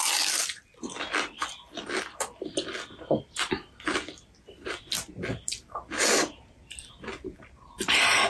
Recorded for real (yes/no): yes